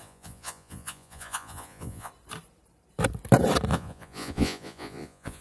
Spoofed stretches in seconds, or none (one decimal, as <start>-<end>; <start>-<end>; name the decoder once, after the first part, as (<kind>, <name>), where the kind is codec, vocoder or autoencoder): 0.0-2.1 (vocoder, Vocos); 3.7-5.4